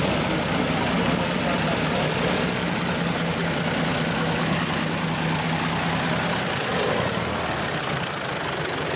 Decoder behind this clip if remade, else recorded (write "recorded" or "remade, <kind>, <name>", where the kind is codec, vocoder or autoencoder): recorded